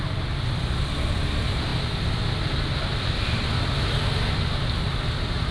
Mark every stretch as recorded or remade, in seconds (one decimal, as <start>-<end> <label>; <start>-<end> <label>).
0.0-5.5 recorded